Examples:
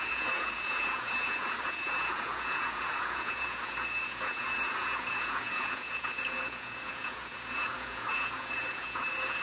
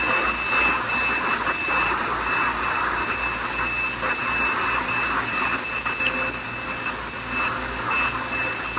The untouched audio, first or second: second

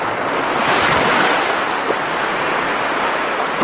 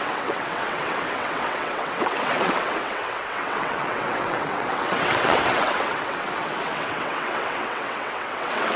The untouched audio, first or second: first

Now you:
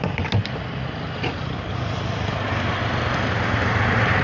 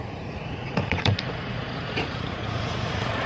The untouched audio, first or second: first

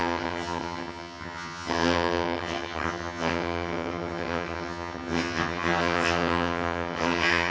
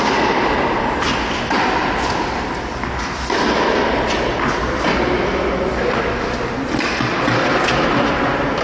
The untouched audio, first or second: second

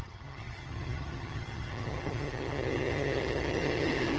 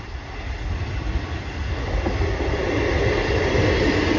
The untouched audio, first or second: second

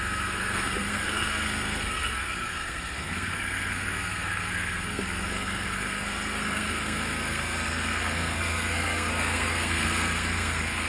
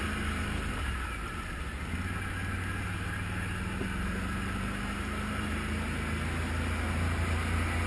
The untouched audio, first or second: second